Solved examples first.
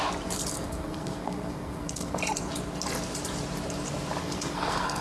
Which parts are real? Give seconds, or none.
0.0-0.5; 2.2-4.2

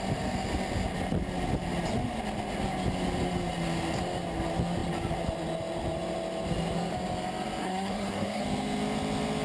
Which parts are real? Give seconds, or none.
0.0-7.6; 8.4-9.4

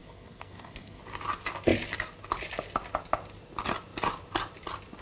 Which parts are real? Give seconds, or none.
1.0-5.0

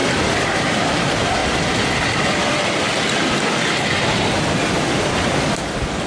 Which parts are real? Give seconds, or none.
0.0-6.1

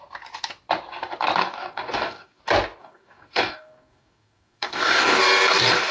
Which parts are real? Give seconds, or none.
0.0-1.4; 2.4-2.8; 5.2-5.9